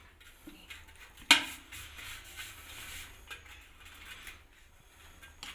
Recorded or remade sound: recorded